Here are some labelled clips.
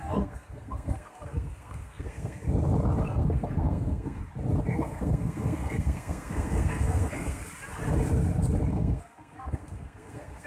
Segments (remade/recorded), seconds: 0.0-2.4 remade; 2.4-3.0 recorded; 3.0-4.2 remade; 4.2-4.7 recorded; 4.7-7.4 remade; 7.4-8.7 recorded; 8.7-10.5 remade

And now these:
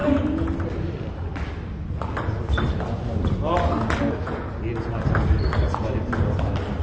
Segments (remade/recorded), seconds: 0.0-6.8 recorded

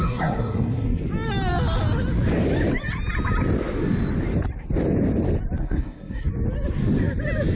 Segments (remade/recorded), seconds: 0.0-1.0 remade; 1.0-5.6 recorded; 5.6-6.3 remade; 6.3-7.6 recorded

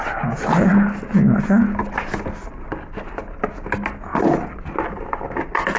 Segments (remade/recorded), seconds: 0.0-5.8 recorded

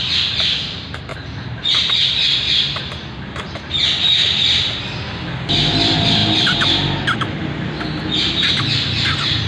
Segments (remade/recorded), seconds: 0.0-9.5 recorded

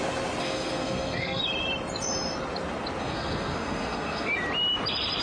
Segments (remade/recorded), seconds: 0.0-0.4 recorded; 0.4-1.4 remade; 1.4-3.0 recorded; 3.0-4.3 remade; 4.3-5.2 recorded

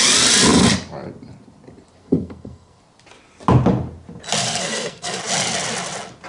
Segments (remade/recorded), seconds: 0.0-2.0 recorded; 2.0-2.8 remade; 2.8-4.4 recorded; 4.4-5.2 remade; 5.2-6.3 recorded